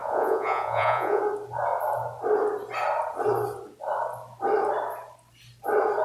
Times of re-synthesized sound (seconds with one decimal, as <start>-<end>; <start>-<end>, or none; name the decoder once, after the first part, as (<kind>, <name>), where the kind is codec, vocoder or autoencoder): 0.0-1.2 (vocoder, Vocos)